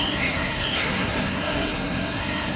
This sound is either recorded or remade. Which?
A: remade